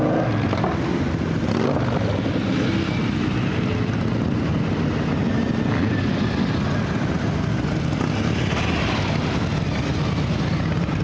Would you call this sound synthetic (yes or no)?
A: no